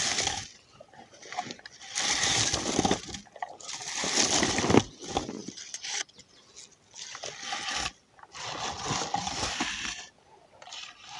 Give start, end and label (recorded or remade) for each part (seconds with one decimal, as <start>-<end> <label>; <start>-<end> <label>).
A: 0.0-5.4 recorded; 5.4-6.0 remade; 6.0-11.2 recorded

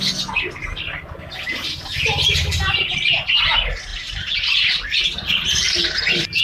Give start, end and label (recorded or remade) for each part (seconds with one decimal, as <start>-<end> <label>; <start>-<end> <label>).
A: 0.0-3.9 recorded; 3.9-6.4 remade

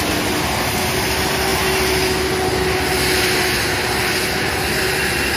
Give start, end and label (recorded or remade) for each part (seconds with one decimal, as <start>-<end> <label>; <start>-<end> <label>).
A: 0.0-5.4 recorded

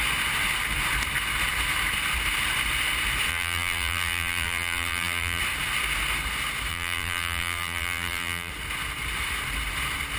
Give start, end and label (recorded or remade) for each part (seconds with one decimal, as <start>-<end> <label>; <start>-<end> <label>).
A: 0.0-3.3 recorded; 3.3-5.4 remade; 5.4-6.7 recorded; 6.7-8.5 remade; 8.5-10.2 recorded

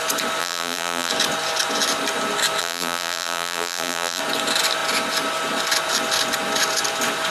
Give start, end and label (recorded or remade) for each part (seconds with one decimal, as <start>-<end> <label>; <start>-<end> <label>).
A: 0.0-0.4 recorded; 0.4-1.1 remade; 1.1-2.6 recorded; 2.6-4.2 remade; 4.2-7.3 recorded

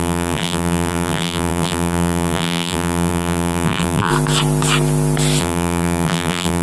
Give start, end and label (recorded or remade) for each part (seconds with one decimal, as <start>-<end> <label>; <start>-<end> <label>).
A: 0.0-4.1 remade; 4.1-5.4 recorded; 5.4-6.6 remade

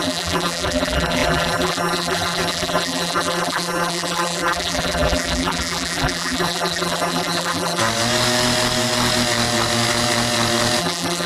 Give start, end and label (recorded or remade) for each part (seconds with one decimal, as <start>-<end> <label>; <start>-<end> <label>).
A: 0.0-7.8 remade; 7.8-10.8 recorded; 10.8-11.3 remade